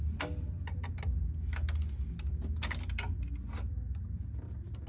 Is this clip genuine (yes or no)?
yes